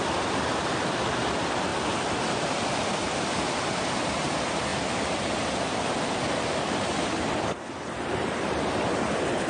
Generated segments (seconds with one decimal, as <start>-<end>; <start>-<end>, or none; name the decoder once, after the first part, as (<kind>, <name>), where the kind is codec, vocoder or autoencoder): 0.0-1.7 (vocoder, BigVGAN v2); 3.2-4.7; 5.5-9.5